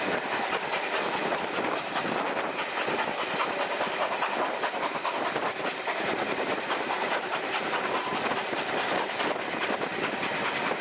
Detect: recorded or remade remade